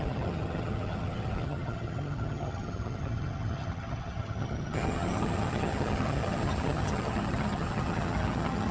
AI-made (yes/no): yes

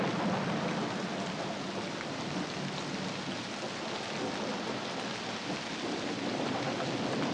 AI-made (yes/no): no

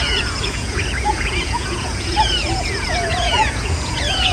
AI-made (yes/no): yes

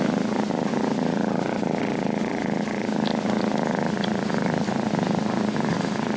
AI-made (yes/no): no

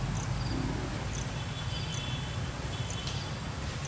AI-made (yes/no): no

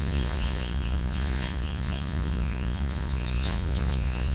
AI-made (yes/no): yes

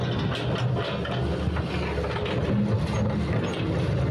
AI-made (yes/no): no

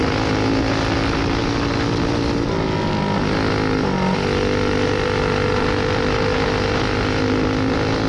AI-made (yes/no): no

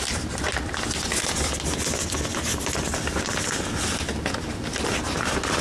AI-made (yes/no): no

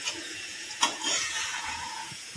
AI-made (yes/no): yes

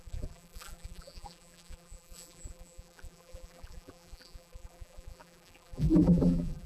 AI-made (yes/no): yes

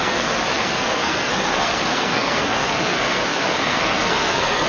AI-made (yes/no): yes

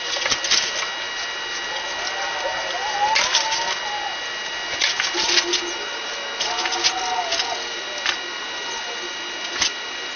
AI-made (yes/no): no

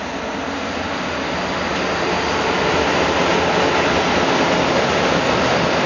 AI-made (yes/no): no